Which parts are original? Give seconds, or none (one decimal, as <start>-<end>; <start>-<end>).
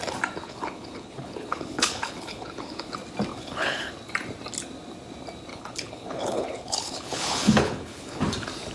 0.0-0.4; 2.9-3.3; 3.9-5.5; 8.2-8.7